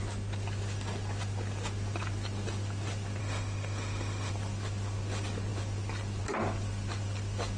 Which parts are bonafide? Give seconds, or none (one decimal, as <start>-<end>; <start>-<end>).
0.0-3.2; 4.3-7.6